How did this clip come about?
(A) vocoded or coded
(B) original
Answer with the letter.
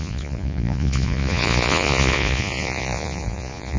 A